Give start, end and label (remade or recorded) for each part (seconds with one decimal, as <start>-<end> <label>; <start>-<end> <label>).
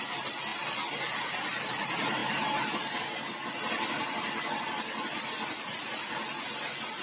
0.0-7.0 recorded